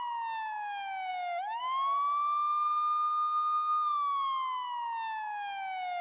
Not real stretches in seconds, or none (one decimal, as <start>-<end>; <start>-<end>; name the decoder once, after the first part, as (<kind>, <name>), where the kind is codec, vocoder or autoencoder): none